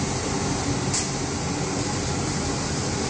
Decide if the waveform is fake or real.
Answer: real